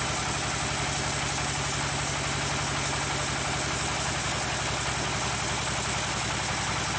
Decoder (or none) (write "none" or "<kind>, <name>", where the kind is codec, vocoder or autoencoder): none